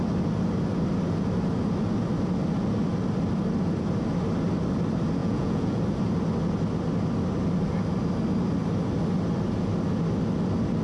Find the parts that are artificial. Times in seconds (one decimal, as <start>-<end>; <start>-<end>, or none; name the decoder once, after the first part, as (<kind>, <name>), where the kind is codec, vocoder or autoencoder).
5.2-5.8 (vocoder, Vocos)